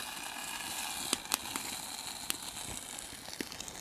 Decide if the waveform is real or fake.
real